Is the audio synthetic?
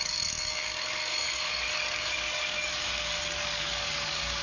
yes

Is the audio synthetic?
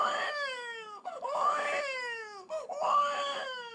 yes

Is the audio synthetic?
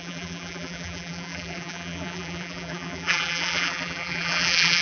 yes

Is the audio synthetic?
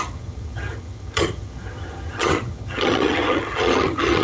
yes